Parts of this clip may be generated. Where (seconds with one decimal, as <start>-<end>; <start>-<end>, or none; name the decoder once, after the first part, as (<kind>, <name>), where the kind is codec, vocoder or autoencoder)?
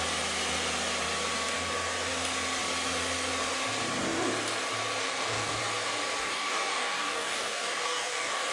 5.0-5.6 (codec, DAC); 6.2-8.5